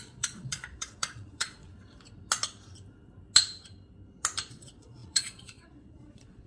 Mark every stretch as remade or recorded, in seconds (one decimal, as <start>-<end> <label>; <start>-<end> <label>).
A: 0.0-1.7 remade; 1.7-4.5 recorded; 4.5-6.5 remade